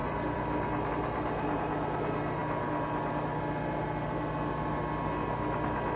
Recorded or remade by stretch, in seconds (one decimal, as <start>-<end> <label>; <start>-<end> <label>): 0.0-0.9 remade; 0.9-6.0 recorded